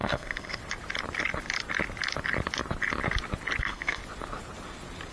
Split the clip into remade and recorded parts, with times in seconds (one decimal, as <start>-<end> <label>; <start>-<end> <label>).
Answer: 0.0-0.6 remade; 0.6-3.6 recorded; 3.6-4.0 remade; 4.0-5.1 recorded